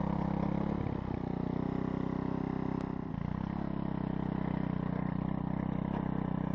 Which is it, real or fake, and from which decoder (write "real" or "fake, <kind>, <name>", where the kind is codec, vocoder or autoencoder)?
real